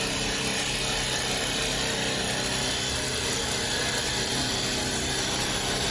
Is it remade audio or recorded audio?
recorded